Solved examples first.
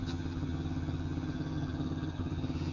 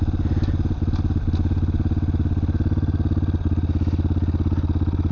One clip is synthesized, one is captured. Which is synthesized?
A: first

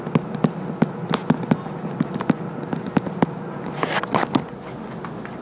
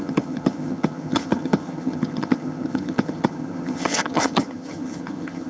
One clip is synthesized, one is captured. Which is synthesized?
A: second